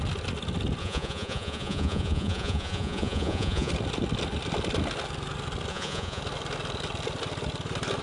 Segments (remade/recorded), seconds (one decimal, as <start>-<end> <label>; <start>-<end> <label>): 0.0-0.8 recorded; 0.8-3.7 remade; 3.7-5.7 recorded; 5.7-6.2 remade; 6.2-8.0 recorded